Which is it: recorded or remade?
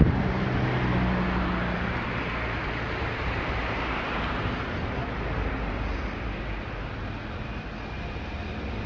recorded